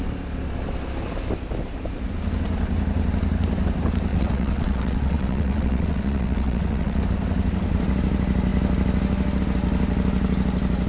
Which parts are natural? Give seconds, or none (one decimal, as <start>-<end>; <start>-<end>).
0.0-4.1; 7.0-10.9